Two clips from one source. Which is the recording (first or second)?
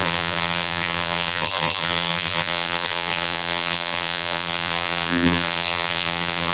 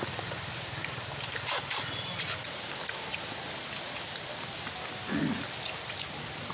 second